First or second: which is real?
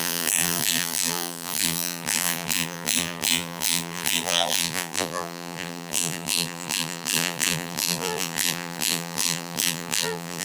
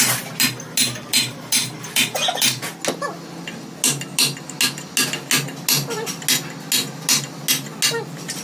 second